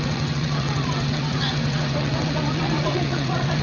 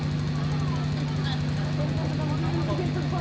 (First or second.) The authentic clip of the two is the second